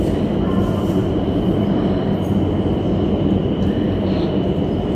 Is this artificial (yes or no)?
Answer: yes